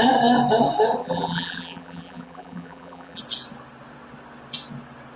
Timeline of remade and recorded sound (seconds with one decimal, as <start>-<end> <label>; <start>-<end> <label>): 0.0-1.0 recorded; 1.0-3.2 remade; 3.2-5.2 recorded

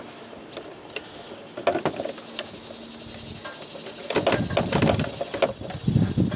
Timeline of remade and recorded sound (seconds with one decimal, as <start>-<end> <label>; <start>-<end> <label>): 0.0-6.4 recorded

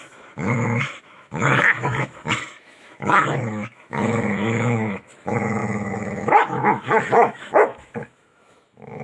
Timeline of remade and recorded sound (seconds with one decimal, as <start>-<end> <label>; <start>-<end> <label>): 0.0-9.0 remade